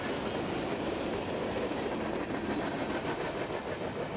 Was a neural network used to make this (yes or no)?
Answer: no